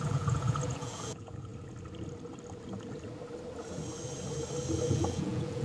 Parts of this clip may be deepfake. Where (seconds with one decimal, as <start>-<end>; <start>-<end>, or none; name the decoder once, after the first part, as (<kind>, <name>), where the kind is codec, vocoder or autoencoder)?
0.0-1.5 (vocoder, Vocos); 4.9-5.6